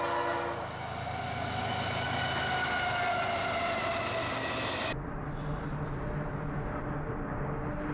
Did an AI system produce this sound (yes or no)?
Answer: no